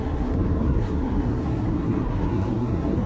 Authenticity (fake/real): fake